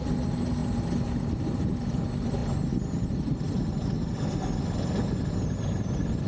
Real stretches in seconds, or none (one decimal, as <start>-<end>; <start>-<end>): 0.0-0.6; 1.7-6.3